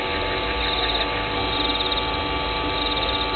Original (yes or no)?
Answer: yes